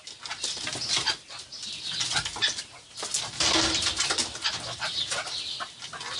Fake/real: real